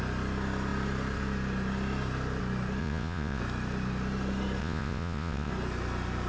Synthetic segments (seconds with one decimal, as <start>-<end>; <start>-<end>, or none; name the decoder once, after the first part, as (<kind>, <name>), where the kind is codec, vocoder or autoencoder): 2.8-3.4 (vocoder, Vocos); 4.6-5.5